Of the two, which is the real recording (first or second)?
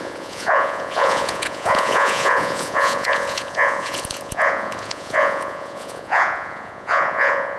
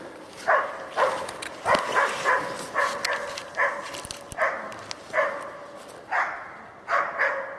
second